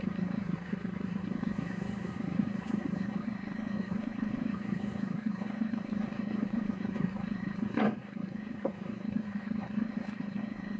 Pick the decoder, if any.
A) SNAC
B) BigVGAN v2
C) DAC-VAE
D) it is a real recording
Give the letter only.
A